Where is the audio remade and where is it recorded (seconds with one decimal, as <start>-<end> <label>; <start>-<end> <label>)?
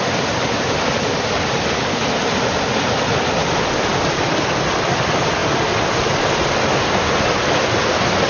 0.0-5.4 remade; 5.4-7.0 recorded; 7.0-8.3 remade